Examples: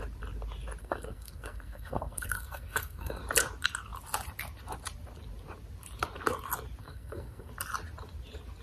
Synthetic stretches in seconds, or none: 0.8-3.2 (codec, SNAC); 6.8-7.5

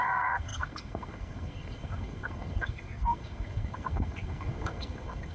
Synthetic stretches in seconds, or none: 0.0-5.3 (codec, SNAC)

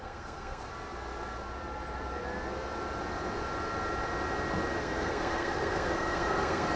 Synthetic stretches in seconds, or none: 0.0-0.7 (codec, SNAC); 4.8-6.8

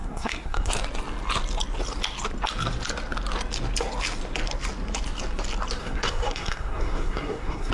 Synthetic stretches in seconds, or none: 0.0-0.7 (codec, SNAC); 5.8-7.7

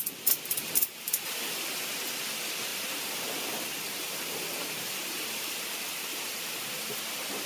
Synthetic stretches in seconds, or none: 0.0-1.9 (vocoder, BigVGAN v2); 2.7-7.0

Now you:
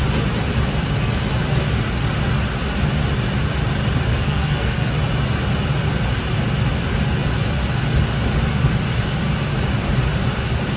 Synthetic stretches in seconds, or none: 4.1-4.9 (codec, SNAC)